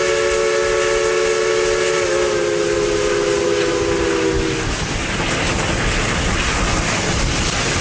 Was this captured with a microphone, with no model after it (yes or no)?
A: yes